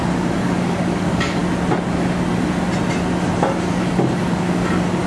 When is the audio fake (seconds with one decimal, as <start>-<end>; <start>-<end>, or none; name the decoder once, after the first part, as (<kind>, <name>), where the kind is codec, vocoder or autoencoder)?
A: 0.0-1.4 (codec, DAC); 3.8-5.1